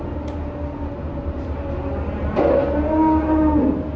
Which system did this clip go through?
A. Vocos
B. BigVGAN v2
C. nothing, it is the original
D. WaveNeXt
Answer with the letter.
C